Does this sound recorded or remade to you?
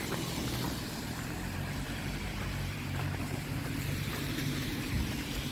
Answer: remade